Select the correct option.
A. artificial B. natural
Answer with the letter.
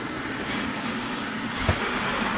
B